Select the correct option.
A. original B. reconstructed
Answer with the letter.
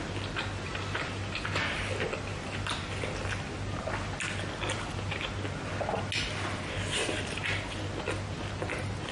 A